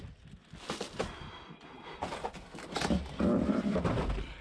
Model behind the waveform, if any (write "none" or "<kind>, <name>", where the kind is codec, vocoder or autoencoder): none